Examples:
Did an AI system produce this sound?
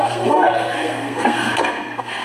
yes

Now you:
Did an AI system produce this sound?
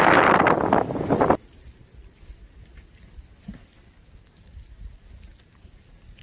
no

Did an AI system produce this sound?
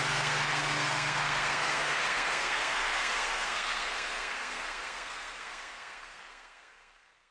yes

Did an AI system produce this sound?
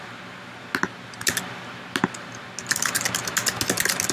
no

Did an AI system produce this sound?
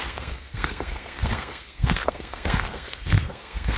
yes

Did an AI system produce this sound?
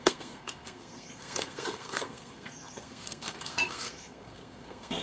yes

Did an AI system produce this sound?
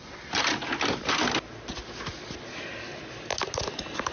no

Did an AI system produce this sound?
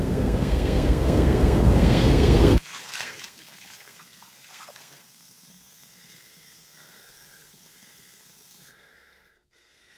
yes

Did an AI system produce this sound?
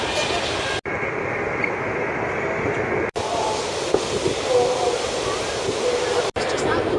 no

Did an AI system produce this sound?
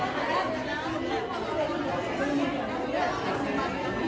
no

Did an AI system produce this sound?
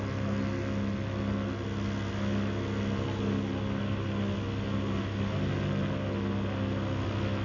no